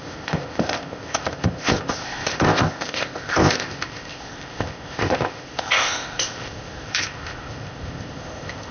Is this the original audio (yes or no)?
no